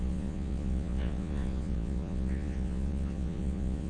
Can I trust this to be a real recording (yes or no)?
no